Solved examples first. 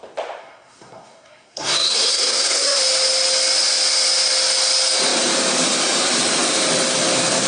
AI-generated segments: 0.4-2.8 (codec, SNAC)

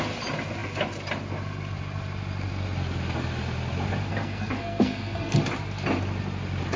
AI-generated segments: 4.1-5.4 (codec, SNAC)

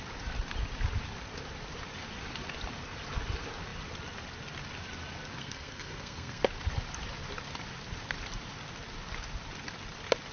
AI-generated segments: 5.4-6.4 (codec, SNAC)

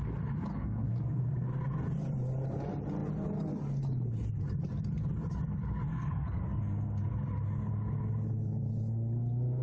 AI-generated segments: 0.5-1.2 (codec, SNAC); 5.9-7.1

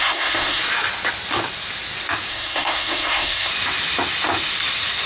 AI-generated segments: 0.0-0.6 (codec, SNAC); 2.3-3.5

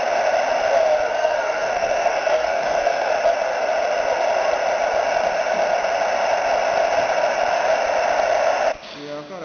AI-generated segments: 1.1-3.1 (codec, SNAC)

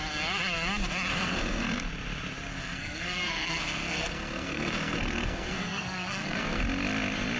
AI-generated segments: 1.1-1.8 (codec, SNAC); 2.5-6.6

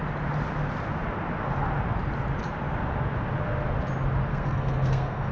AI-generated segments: 4.3-5.3 (codec, SNAC)